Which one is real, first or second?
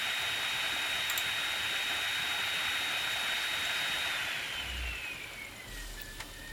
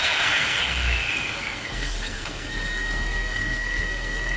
first